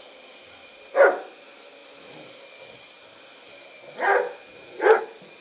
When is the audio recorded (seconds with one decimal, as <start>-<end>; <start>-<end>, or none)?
0.0-5.4

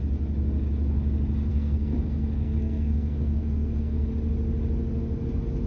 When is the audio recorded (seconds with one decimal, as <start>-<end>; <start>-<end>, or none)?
0.0-1.5; 4.1-5.7

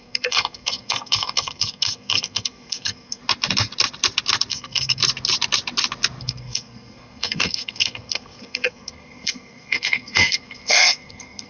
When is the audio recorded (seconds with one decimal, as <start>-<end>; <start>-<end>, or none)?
3.2-4.5; 5.0-6.2

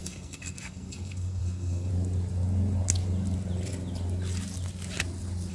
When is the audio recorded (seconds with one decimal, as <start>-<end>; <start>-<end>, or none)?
1.9-5.5